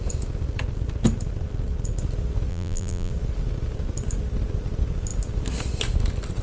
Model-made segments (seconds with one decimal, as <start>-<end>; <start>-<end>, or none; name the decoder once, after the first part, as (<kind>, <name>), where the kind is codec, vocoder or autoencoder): 2.5-3.1 (vocoder, BigVGAN v2)